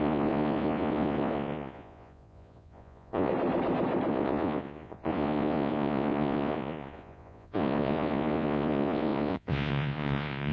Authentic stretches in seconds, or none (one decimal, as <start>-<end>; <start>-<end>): 3.3-4.1